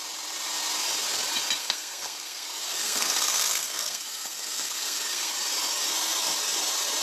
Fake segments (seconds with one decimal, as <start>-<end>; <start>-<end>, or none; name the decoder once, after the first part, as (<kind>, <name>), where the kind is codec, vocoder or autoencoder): 1.6-5.3 (codec, SNAC)